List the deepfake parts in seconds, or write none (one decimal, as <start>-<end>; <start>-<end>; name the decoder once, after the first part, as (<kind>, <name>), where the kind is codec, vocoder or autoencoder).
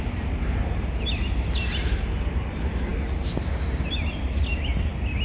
none